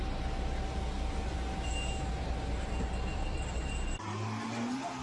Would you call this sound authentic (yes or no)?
yes